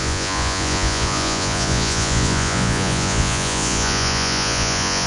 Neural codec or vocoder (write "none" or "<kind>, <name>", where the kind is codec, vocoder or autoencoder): vocoder, Vocos